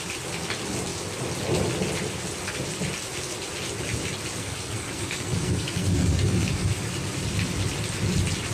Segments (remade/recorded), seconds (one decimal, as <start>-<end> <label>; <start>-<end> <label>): 0.0-4.4 recorded; 4.4-6.8 remade; 6.8-8.5 recorded